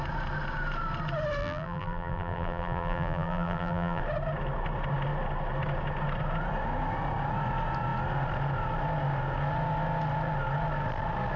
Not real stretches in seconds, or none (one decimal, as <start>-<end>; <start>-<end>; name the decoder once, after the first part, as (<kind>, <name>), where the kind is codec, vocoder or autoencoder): 1.4-4.0 (vocoder, BigVGAN v2)